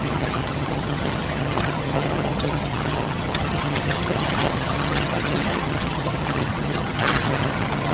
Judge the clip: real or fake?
fake